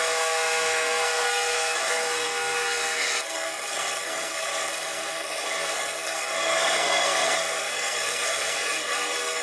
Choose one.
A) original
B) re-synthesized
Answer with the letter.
B